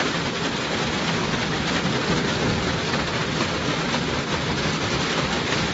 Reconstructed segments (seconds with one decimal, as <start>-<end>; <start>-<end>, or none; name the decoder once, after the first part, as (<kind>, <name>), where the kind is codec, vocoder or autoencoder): none